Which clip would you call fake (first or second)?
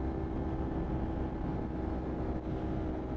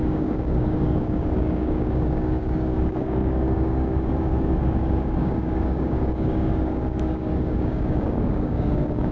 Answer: second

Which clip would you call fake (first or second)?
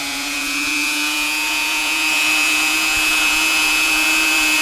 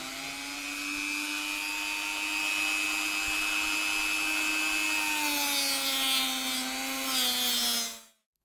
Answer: first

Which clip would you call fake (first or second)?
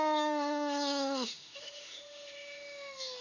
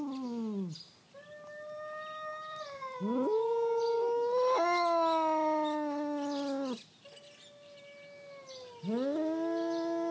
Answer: first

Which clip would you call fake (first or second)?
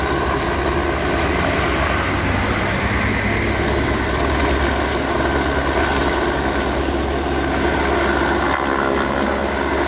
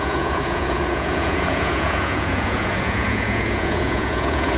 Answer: second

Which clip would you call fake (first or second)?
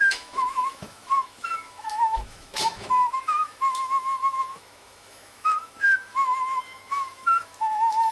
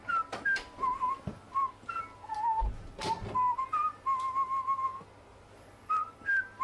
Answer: first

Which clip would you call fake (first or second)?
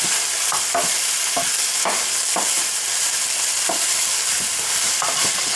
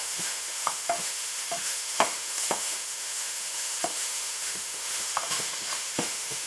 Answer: second